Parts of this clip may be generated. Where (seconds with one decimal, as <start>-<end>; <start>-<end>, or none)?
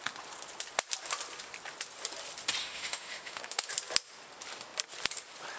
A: 2.6-3.7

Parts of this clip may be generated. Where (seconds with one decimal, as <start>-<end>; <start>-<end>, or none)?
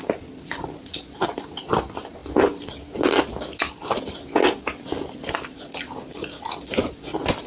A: none